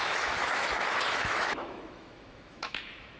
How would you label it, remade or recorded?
remade